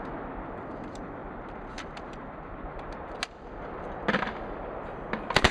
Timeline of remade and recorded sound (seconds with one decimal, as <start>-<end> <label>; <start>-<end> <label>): 0.0-5.5 recorded